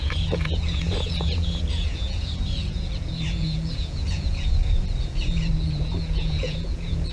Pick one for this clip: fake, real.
fake